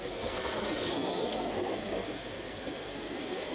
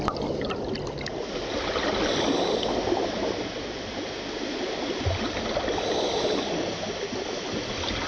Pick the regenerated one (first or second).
first